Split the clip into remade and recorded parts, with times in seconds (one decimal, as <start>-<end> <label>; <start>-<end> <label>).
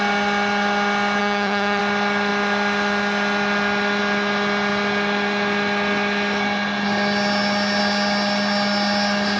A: 0.0-1.2 recorded; 1.2-1.8 remade; 1.8-9.4 recorded